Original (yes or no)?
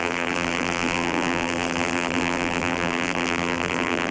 no